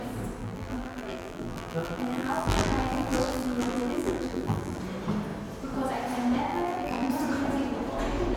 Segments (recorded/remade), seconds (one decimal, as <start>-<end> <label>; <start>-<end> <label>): 0.0-0.4 recorded; 0.4-4.8 remade; 4.8-6.5 recorded; 6.5-7.1 remade; 7.1-8.4 recorded

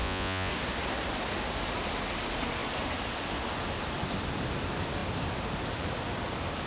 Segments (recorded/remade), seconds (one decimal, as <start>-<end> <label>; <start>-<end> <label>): 0.0-0.5 remade; 0.5-6.7 recorded

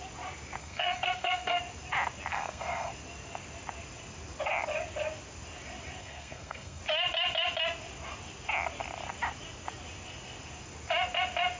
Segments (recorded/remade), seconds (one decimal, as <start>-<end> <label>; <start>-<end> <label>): 0.0-0.6 recorded; 0.6-1.6 remade; 1.6-2.3 recorded; 2.3-2.9 remade; 2.9-6.0 recorded; 6.0-6.8 remade; 6.8-11.6 recorded

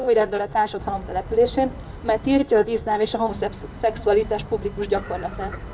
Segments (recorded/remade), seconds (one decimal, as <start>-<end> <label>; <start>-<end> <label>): 0.0-0.8 remade; 0.8-2.4 recorded; 2.4-3.3 remade; 3.3-5.7 recorded